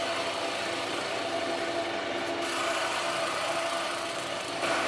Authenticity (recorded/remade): recorded